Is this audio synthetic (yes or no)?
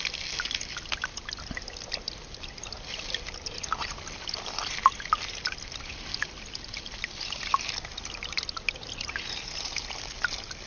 no